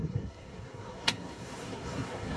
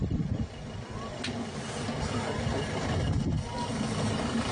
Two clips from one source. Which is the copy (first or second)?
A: first